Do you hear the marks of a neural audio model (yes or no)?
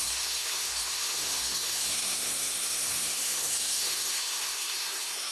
yes